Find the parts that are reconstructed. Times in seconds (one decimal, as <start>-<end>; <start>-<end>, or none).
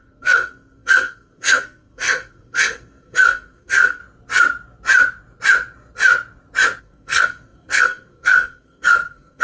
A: 0.0-4.0; 6.8-9.4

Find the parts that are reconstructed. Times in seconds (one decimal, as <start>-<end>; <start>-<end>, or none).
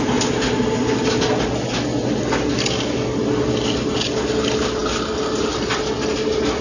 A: none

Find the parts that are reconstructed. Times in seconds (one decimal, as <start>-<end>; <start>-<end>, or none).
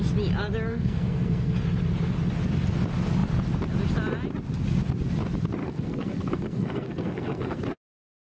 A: 0.7-1.5; 5.6-7.6